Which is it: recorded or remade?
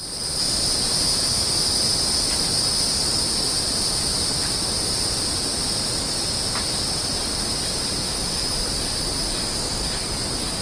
recorded